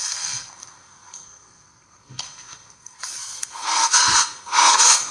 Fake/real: fake